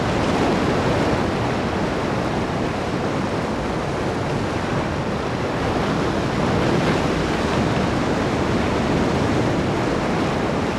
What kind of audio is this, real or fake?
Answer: real